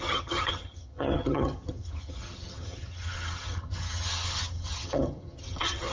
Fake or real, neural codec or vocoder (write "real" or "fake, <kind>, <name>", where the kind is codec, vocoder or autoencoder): fake, vocoder, HiFi-GAN